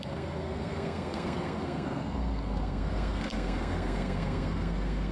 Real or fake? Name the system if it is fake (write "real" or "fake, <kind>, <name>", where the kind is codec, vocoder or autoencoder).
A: fake, codec, SNAC